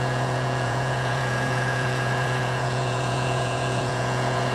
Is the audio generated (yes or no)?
yes